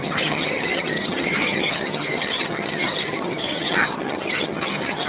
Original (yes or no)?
no